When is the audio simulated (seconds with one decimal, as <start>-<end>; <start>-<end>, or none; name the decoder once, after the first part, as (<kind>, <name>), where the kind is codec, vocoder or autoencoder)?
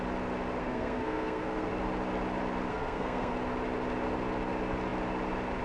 0.6-1.7 (codec, SNAC); 2.7-3.3